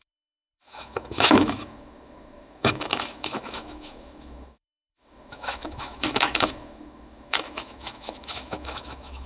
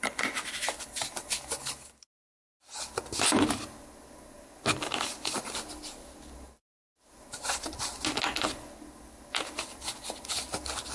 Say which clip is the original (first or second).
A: second